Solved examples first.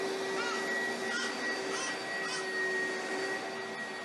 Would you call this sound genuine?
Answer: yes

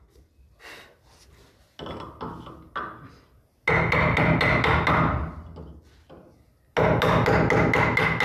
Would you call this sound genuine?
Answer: yes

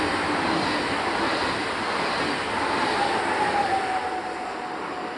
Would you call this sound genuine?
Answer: yes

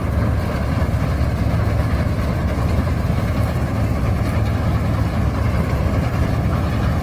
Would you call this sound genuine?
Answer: yes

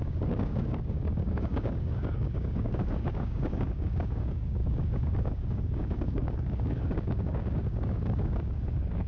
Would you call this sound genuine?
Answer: no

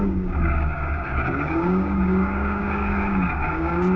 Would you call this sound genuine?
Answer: no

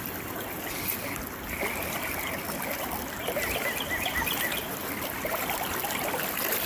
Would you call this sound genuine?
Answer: yes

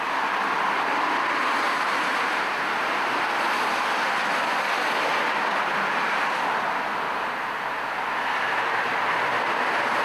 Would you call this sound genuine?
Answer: yes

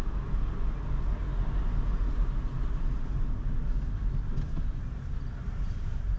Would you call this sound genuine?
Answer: yes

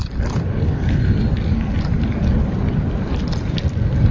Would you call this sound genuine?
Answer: yes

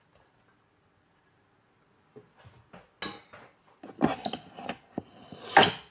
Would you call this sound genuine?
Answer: yes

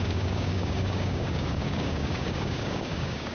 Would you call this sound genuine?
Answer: no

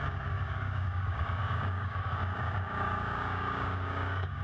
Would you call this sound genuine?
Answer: no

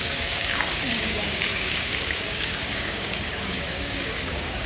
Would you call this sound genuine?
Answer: no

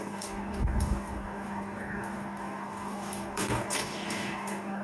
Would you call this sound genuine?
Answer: no